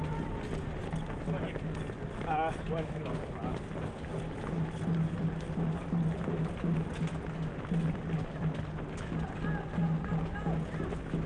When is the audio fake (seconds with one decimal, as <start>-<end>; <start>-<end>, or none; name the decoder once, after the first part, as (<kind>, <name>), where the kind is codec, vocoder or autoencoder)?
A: none